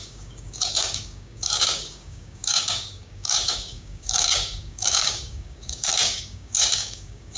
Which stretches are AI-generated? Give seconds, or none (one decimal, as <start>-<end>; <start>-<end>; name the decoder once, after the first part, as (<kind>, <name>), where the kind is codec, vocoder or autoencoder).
0.0-7.4 (codec, DAC)

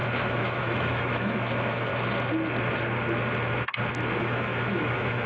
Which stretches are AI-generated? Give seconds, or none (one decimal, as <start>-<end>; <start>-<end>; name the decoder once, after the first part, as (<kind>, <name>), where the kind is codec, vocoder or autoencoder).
0.0-1.9 (autoencoder, DAC-VAE); 4.2-5.3